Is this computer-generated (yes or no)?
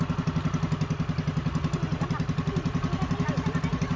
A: no